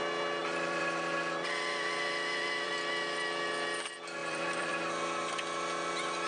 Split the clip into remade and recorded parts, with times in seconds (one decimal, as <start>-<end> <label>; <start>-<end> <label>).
0.0-0.4 recorded; 0.4-2.7 remade; 2.7-4.2 recorded; 4.2-4.8 remade; 4.8-6.3 recorded